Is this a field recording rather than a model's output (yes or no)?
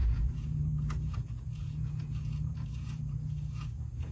no